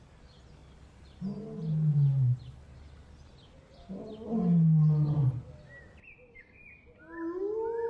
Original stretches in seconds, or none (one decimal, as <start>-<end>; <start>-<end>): 0.0-7.9